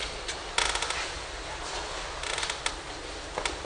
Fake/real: real